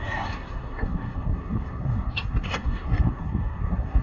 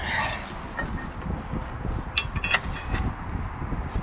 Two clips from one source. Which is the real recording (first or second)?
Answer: second